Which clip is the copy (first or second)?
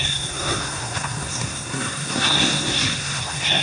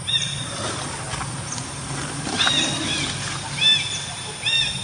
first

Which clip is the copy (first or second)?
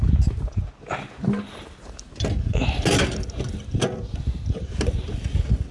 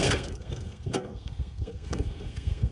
second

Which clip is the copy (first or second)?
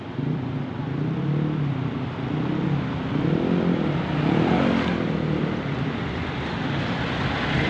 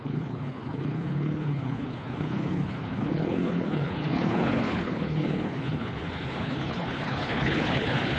second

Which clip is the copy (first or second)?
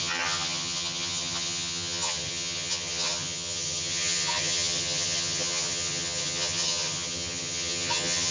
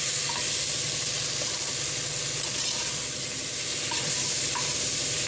first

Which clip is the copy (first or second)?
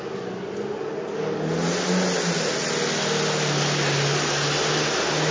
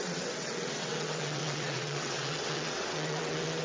second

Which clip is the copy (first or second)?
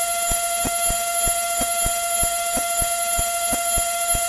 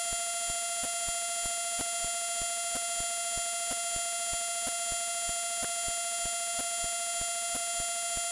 first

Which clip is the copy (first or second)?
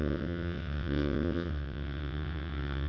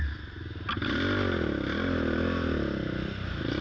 first